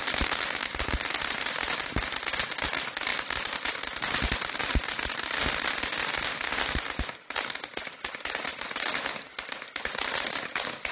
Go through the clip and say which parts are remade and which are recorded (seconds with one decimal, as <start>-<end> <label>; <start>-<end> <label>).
0.0-10.9 recorded